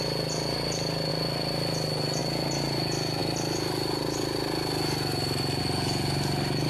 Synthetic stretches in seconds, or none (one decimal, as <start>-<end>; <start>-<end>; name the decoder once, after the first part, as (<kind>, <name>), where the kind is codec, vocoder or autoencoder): 3.2-5.6 (vocoder, BigVGAN v2)

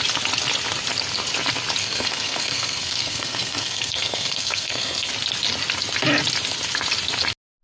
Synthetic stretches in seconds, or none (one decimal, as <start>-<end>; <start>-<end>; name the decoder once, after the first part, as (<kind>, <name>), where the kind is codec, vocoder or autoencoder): 1.8-5.1 (codec, SNAC)

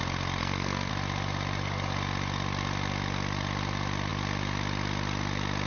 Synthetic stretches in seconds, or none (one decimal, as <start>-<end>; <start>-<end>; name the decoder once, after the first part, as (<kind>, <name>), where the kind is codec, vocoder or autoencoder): 0.4-0.9 (codec, SNAC)

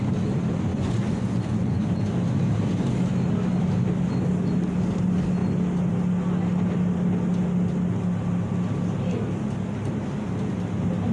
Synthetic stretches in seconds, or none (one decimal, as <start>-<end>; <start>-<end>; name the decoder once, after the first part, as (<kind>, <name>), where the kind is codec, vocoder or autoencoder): 0.7-1.8 (vocoder, Vocos)

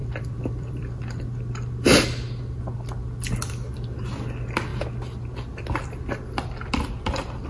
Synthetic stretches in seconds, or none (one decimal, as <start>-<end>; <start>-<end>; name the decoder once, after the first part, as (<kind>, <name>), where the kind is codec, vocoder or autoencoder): 0.0-1.2 (vocoder, BigVGAN v2)

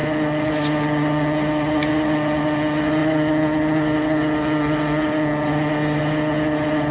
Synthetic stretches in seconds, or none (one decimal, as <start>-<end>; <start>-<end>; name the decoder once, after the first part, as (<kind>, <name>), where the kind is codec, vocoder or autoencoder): none

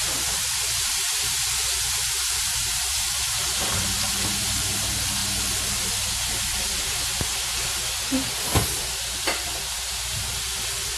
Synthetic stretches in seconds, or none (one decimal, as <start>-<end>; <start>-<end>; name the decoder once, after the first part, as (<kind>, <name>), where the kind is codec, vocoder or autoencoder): 0.0-5.2 (vocoder, BigVGAN v2); 9.1-11.0